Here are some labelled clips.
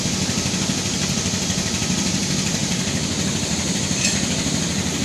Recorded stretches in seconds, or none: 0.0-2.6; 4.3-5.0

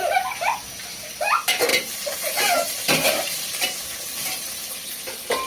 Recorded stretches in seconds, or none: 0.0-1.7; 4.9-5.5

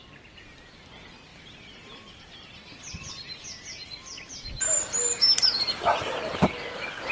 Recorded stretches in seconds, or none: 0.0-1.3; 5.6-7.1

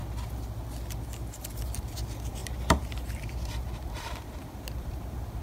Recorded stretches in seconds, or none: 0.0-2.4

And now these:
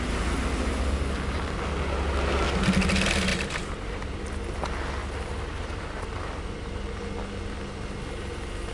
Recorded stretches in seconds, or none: 0.0-3.3; 4.1-5.0; 6.4-8.7

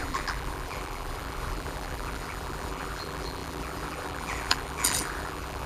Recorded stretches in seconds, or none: none

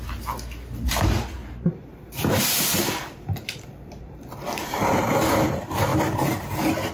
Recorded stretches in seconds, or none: 0.0-1.4; 5.5-5.9